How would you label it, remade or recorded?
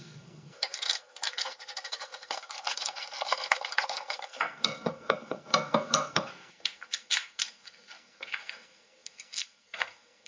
remade